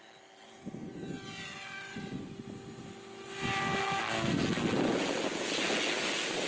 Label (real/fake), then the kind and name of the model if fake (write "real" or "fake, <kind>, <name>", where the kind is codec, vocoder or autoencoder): real